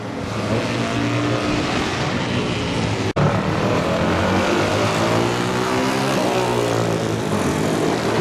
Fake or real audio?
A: real